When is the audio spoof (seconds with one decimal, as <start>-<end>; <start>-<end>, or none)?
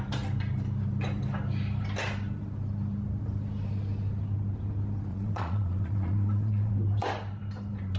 5.1-6.7